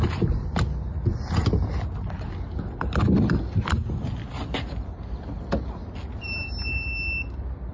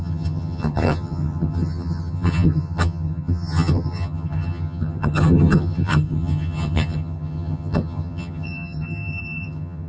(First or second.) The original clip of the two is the first